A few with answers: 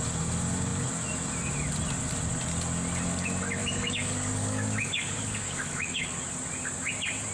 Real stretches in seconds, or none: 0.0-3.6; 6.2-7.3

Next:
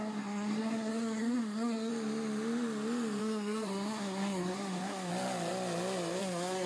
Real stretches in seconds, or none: 1.9-3.2; 5.1-6.2